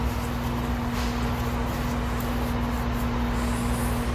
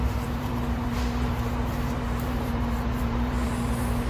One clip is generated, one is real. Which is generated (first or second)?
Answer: second